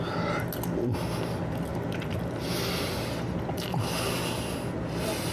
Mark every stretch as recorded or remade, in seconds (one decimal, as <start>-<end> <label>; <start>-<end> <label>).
0.0-5.3 recorded